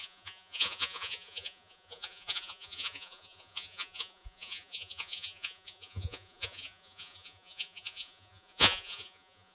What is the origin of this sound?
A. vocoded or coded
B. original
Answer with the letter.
A